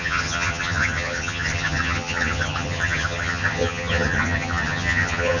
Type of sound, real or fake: fake